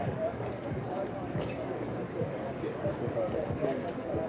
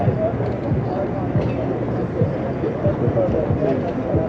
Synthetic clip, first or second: first